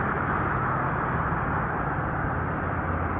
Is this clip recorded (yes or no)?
yes